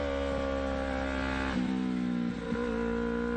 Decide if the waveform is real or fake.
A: real